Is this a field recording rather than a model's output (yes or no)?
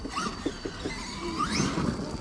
yes